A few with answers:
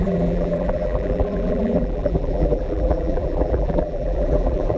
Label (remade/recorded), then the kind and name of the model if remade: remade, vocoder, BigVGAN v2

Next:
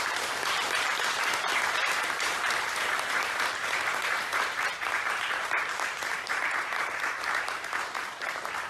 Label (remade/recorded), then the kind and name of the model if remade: remade, vocoder, BigVGAN v2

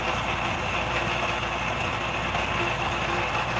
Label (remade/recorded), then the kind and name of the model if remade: recorded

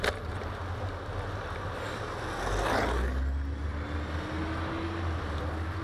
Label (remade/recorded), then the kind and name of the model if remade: recorded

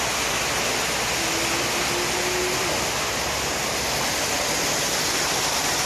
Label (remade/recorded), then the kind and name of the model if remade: recorded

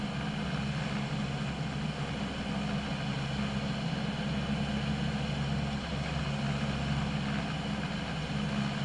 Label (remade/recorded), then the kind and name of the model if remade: recorded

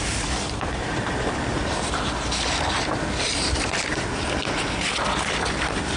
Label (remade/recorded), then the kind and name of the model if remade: remade, vocoder, BigVGAN v2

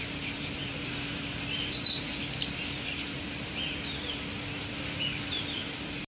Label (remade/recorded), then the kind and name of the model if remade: remade, vocoder, BigVGAN v2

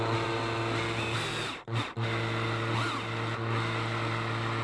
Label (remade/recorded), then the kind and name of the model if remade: recorded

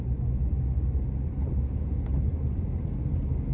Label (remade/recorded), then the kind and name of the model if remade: recorded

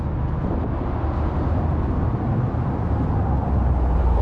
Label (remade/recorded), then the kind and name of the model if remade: recorded